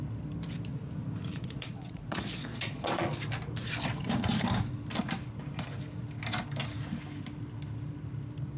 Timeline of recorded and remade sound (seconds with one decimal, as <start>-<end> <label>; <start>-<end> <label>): 0.0-1.3 recorded; 1.3-3.2 remade; 3.2-8.6 recorded